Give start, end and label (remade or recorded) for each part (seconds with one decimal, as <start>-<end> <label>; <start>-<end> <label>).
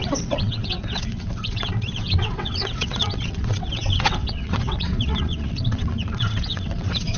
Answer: 0.0-7.2 remade